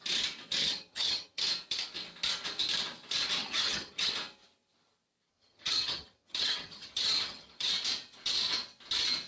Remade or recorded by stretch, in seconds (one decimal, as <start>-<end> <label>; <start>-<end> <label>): 0.0-0.6 recorded; 0.6-1.4 remade; 1.4-3.4 recorded; 3.4-4.1 remade; 4.1-5.3 recorded; 5.3-7.7 remade; 7.7-9.3 recorded